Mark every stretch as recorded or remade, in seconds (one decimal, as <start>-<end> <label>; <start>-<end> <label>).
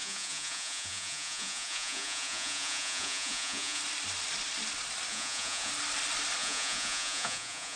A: 0.0-3.8 remade; 3.8-5.1 recorded; 5.1-5.7 remade; 5.7-6.4 recorded; 6.4-7.8 remade